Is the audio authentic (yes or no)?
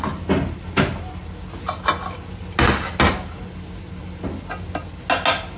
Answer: yes